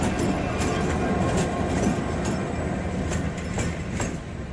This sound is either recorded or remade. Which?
recorded